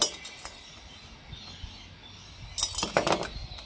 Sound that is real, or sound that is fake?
real